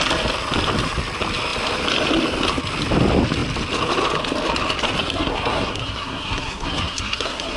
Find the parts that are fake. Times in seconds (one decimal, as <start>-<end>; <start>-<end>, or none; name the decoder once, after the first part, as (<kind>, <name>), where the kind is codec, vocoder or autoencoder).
5.0-7.6 (codec, SNAC)